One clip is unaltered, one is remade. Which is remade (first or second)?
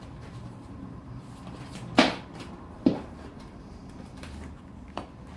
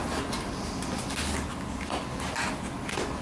first